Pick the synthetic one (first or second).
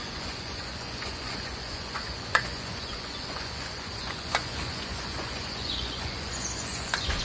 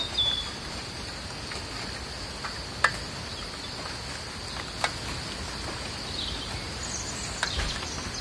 first